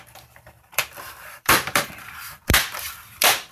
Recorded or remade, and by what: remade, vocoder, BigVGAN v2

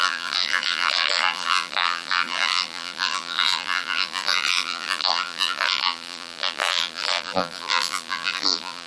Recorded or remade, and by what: remade, vocoder, BigVGAN v2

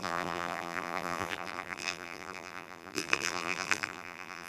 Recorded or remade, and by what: remade, vocoder, BigVGAN v2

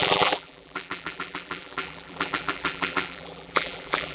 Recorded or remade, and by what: remade, vocoder, BigVGAN v2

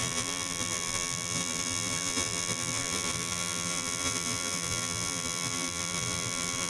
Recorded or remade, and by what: remade, vocoder, BigVGAN v2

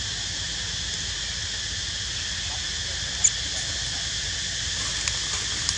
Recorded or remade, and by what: recorded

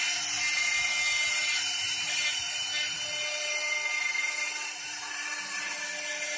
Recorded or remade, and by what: recorded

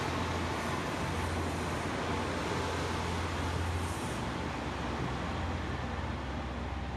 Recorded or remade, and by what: recorded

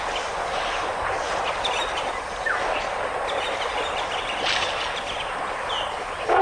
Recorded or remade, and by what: remade, vocoder, BigVGAN v2